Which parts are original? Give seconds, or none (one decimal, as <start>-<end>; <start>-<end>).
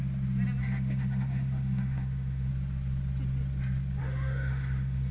0.0-0.6; 2.5-4.0